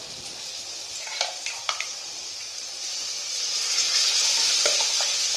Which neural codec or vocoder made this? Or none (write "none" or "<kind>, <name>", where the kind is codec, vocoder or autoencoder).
none